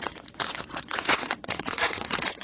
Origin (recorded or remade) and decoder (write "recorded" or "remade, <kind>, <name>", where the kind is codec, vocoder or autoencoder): remade, vocoder, WaveNeXt